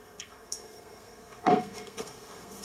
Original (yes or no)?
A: no